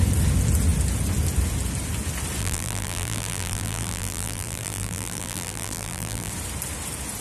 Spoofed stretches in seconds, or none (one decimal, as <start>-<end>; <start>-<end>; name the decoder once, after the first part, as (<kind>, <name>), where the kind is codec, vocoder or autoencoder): 2.4-6.3 (vocoder, BigVGAN v2)

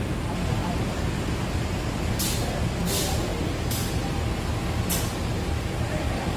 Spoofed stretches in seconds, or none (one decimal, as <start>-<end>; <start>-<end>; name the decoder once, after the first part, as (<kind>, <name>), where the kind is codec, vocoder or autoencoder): none